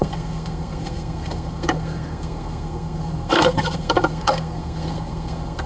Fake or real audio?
fake